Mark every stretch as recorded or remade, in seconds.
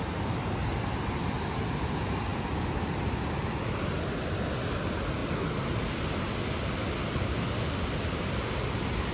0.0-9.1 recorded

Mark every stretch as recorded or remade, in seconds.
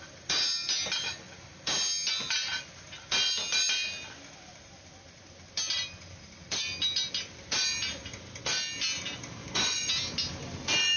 0.0-9.4 recorded; 9.4-9.9 remade; 9.9-11.0 recorded